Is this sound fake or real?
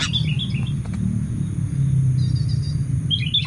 real